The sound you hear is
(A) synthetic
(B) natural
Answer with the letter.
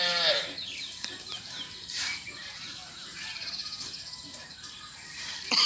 A